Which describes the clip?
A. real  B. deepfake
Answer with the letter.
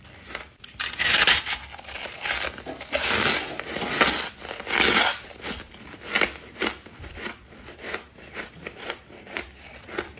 A